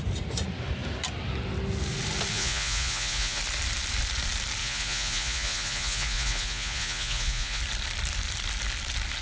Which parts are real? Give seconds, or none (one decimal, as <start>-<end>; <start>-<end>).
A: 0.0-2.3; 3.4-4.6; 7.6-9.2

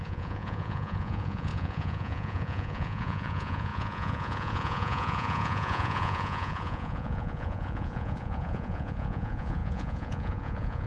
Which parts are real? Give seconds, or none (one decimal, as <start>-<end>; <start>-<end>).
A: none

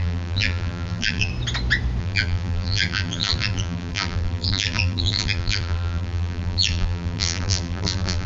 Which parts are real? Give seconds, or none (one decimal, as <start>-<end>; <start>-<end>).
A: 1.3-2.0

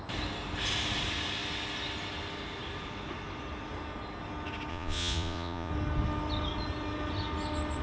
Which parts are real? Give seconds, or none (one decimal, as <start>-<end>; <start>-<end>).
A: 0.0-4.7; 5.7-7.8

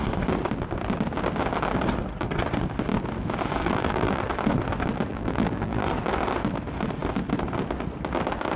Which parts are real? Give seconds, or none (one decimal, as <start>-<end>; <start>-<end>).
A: 0.0-3.6; 4.2-5.1; 5.9-8.6

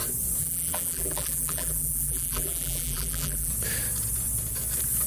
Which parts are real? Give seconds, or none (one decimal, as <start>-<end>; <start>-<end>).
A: 0.0-0.4; 3.5-5.1